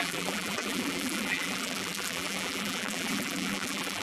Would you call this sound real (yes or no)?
no